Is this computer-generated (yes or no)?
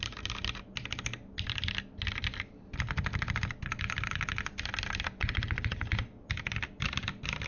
no